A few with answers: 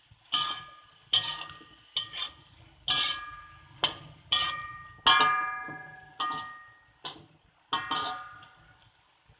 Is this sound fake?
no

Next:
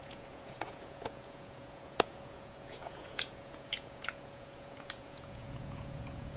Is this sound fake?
yes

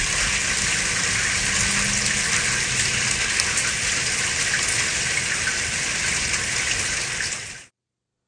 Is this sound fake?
no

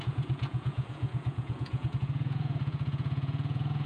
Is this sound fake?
yes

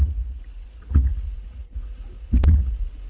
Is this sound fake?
yes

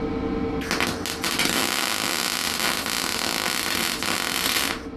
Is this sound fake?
no